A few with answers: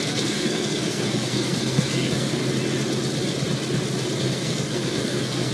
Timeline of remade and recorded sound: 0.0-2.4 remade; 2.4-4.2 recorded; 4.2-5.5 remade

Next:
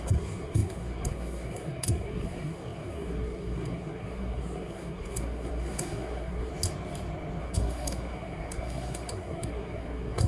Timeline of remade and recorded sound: 0.0-6.5 remade; 6.5-7.4 recorded; 7.4-10.3 remade

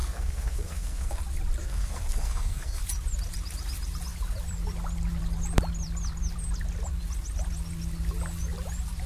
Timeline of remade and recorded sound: 0.0-1.2 remade; 1.2-1.6 recorded; 1.6-2.8 remade; 2.8-9.1 recorded

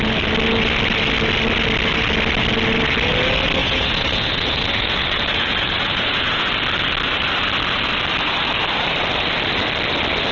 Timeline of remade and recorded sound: 0.0-3.6 recorded; 3.6-6.5 remade; 6.5-10.3 recorded

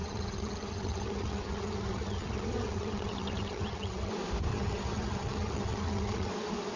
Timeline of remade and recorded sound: 0.0-4.1 remade; 4.1-4.5 recorded; 4.5-6.3 remade; 6.3-6.8 recorded